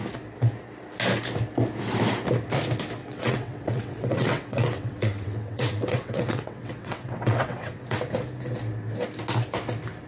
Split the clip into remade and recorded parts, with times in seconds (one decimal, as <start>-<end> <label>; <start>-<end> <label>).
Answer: 0.0-3.0 recorded; 3.0-8.0 remade; 8.0-10.1 recorded